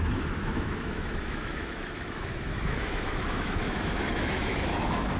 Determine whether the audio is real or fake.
fake